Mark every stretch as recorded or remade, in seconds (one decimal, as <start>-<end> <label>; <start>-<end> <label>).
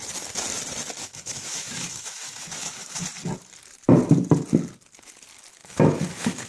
0.0-1.0 recorded; 1.0-3.0 remade; 3.0-5.6 recorded; 5.6-6.5 remade